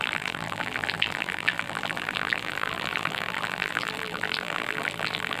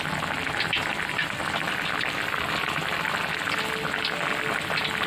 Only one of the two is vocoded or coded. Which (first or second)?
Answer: first